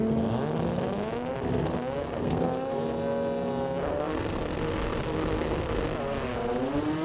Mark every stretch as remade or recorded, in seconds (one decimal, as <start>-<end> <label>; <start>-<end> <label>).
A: 0.0-2.0 recorded; 2.0-2.8 remade; 2.8-3.8 recorded; 3.8-5.8 remade; 5.8-7.0 recorded